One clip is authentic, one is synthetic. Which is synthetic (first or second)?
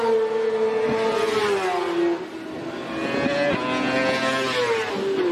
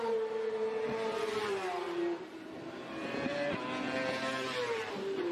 second